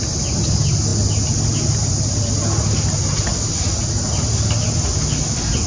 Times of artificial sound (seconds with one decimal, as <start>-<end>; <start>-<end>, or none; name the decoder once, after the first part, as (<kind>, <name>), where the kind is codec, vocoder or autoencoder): none